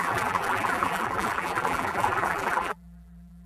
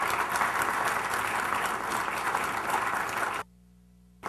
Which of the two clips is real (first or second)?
second